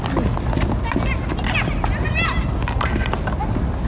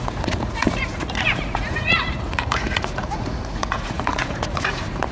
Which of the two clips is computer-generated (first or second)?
second